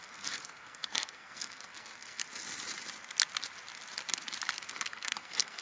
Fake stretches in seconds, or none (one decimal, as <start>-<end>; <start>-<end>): 0.0-2.2; 4.7-5.6

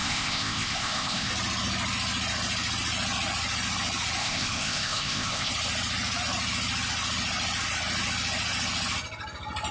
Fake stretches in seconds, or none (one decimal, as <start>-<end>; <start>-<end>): 0.0-1.3; 4.2-5.5

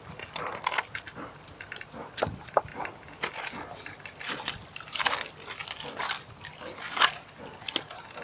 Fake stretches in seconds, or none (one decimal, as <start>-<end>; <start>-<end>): none

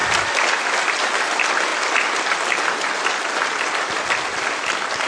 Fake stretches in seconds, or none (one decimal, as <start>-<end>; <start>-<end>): 0.0-1.7; 3.7-5.1

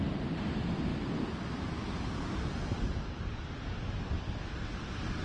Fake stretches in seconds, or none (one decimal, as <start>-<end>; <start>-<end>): none

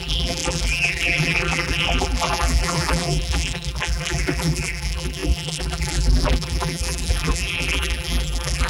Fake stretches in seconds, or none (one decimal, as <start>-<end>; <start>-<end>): 0.0-8.7